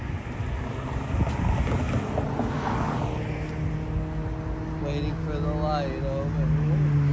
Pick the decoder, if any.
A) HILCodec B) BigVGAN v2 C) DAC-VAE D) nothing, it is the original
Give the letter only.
D